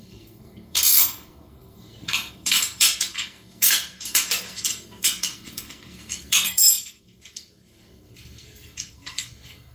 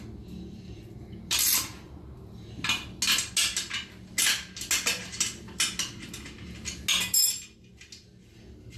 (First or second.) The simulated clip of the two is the first